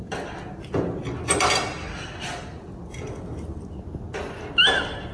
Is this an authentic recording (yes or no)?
yes